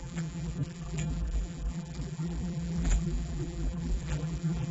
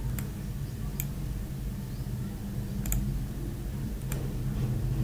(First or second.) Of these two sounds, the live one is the second